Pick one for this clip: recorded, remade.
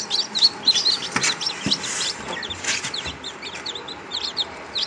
recorded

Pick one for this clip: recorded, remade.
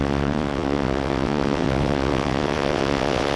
remade